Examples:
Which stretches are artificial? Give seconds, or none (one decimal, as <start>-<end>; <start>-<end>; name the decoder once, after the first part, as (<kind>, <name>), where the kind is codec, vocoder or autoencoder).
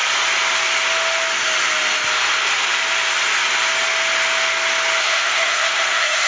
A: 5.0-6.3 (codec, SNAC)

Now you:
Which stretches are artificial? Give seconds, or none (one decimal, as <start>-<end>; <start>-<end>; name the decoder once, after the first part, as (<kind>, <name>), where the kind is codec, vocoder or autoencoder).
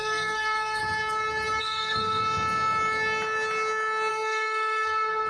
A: 0.0-0.8 (codec, SNAC); 1.6-2.2; 4.1-5.3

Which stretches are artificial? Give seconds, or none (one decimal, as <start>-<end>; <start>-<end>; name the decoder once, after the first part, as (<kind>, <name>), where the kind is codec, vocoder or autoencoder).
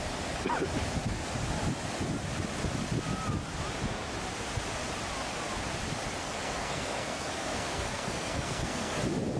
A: 6.2-9.0 (codec, SNAC)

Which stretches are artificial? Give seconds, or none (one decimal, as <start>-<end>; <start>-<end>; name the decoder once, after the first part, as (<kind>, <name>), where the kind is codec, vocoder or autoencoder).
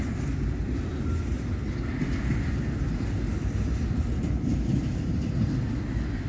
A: none